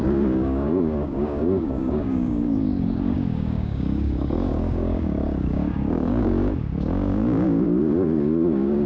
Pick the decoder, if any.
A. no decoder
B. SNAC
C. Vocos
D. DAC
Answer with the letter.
D